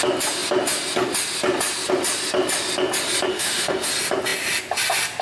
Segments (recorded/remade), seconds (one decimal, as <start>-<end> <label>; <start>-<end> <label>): 0.0-3.3 recorded; 3.3-3.9 remade; 3.9-5.2 recorded